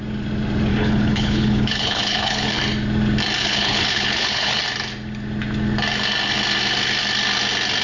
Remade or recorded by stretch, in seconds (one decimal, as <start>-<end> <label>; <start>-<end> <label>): 0.0-0.7 recorded; 0.7-2.6 remade; 2.6-3.4 recorded; 3.4-4.6 remade; 4.6-7.8 recorded